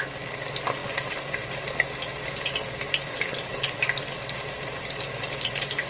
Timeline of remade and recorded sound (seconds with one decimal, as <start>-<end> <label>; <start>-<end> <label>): 0.0-5.9 recorded